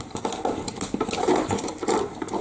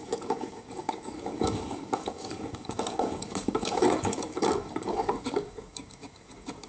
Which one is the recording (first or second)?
first